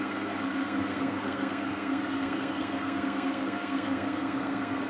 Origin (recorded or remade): remade